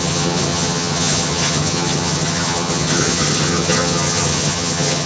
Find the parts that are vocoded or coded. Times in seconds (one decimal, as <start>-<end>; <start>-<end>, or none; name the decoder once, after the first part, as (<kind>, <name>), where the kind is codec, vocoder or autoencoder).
0.0-5.1 (vocoder, HiFi-GAN)